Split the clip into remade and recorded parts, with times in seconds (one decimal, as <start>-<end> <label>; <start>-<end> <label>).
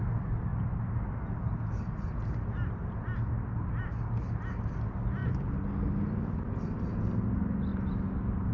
0.0-8.5 recorded